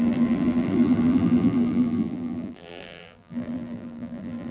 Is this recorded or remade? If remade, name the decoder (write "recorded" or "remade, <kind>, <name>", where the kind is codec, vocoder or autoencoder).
remade, vocoder, BigVGAN v2